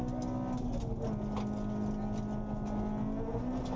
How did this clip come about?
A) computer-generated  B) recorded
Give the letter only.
B